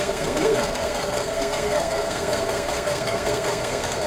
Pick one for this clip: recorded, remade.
remade